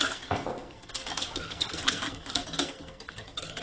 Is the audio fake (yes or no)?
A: yes